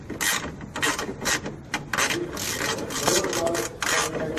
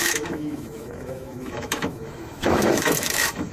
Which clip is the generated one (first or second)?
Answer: second